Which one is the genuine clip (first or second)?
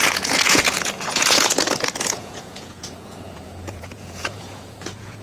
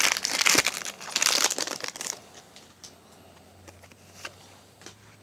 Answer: second